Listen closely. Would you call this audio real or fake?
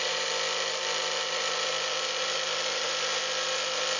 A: real